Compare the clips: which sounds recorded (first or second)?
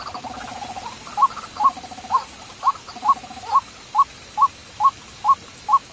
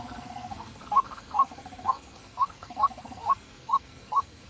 first